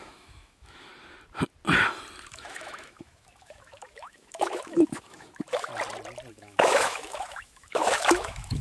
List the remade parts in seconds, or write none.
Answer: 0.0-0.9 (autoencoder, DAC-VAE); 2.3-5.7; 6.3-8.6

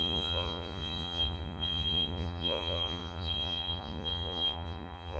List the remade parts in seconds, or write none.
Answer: 0.0-5.2 (vocoder, Vocos)

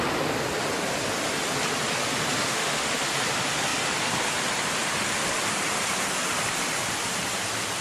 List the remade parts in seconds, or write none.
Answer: 2.4-3.1 (autoencoder, DAC-VAE)

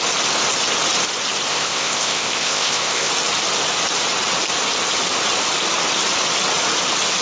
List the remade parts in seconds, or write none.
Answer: 1.5-3.1 (codec, ZipCodec)

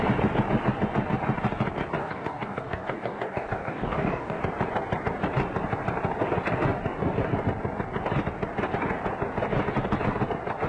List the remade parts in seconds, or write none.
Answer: 2.0-4.4 (codec, DAC)

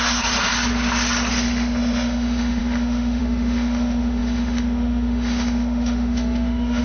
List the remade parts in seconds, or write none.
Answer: 0.0-0.5 (autoencoder, DAC-VAE); 1.3-6.8

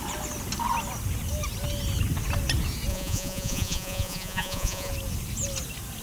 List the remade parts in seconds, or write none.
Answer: 2.9-4.9 (vocoder, Vocos)